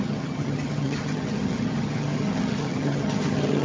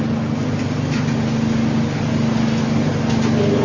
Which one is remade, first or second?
first